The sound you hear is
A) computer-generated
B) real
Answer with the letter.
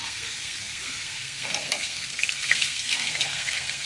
A